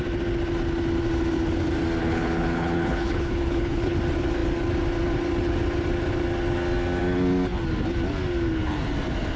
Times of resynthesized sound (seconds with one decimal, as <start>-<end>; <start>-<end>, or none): 2.0-4.0